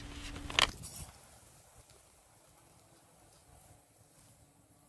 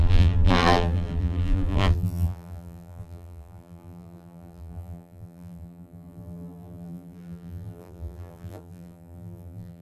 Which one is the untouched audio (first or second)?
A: first